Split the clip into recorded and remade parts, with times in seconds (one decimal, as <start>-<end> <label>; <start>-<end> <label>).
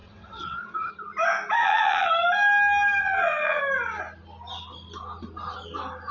0.0-0.9 remade; 0.9-1.6 recorded; 1.6-2.1 remade; 2.1-3.0 recorded; 3.0-3.6 remade; 3.6-6.1 recorded